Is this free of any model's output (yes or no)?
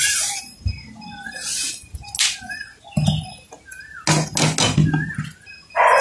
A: yes